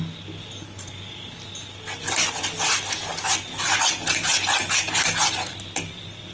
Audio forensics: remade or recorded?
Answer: recorded